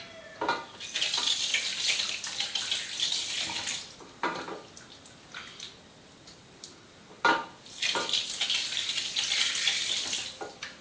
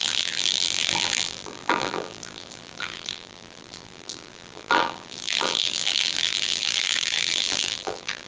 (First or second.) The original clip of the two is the first